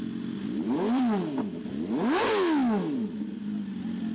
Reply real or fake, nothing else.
real